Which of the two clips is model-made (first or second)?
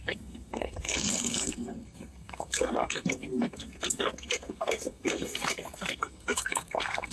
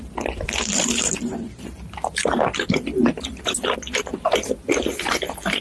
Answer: first